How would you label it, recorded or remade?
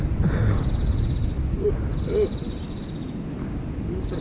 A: recorded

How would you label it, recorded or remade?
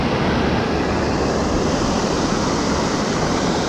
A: recorded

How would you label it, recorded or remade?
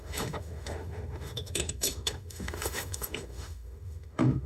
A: remade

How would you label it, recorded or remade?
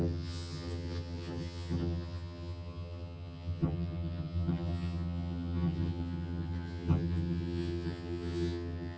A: remade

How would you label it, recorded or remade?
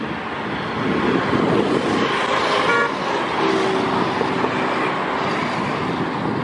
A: recorded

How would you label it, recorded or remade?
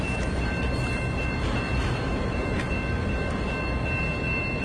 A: recorded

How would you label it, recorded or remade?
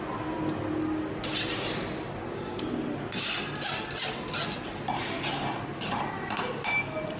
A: recorded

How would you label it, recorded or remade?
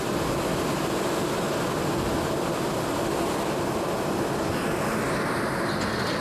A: recorded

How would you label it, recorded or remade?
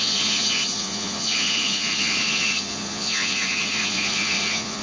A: remade